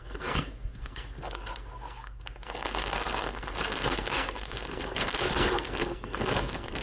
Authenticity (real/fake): fake